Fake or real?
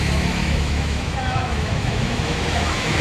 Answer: fake